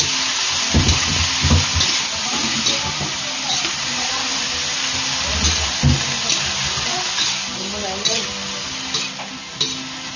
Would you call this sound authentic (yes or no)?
yes